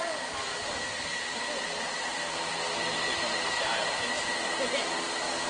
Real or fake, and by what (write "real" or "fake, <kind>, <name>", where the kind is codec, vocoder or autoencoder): real